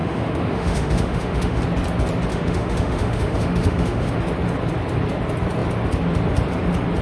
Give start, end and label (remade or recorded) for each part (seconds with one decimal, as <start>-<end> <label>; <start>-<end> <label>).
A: 0.0-1.6 remade; 1.6-2.3 recorded; 2.3-4.1 remade; 4.1-7.0 recorded